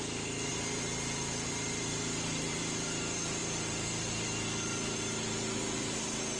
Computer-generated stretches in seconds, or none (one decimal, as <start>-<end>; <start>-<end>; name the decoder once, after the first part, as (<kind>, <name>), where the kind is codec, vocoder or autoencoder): none